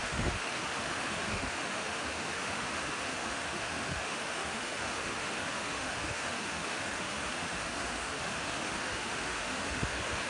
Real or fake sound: fake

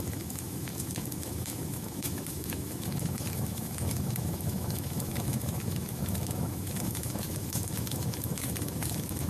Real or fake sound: fake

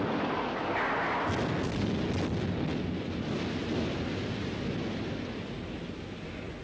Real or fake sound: real